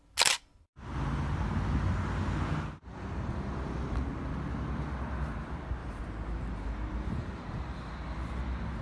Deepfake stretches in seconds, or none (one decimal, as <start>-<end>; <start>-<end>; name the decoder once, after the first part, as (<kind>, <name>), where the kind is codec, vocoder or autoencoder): 5.8-7.9 (vocoder, BigVGAN v2)